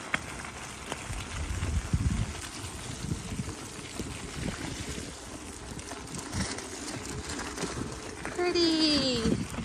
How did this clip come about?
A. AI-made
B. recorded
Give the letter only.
B